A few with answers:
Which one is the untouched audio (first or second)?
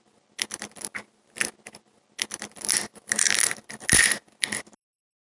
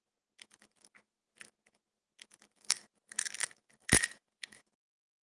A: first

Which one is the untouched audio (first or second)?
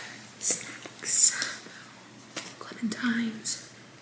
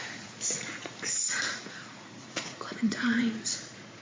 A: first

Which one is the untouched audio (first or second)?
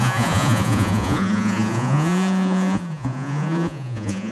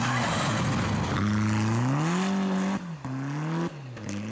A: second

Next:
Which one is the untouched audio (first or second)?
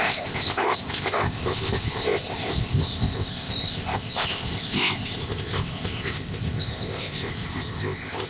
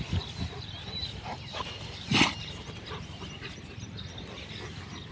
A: second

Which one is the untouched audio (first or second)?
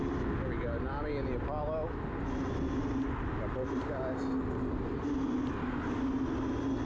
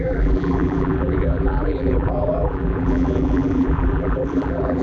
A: first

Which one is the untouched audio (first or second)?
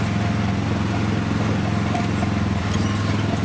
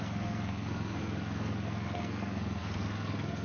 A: first